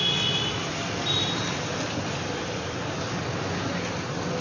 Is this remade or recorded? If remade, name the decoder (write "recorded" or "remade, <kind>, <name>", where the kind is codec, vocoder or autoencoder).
recorded